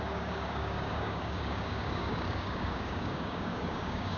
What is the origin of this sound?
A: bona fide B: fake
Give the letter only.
B